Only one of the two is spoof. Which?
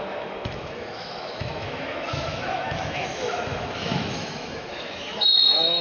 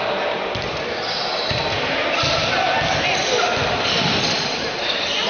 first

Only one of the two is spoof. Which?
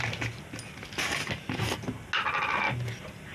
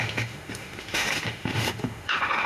second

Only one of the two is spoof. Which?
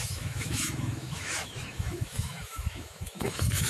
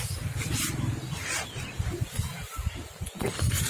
first